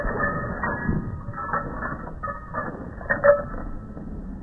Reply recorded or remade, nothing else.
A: recorded